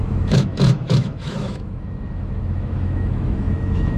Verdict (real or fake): fake